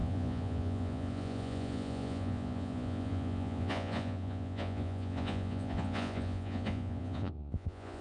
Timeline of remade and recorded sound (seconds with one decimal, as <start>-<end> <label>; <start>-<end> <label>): 0.0-8.0 remade